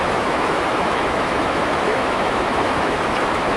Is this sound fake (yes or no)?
yes